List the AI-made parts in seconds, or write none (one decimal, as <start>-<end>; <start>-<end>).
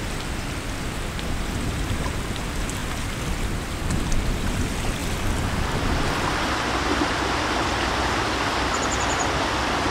none